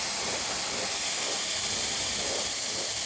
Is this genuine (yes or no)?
yes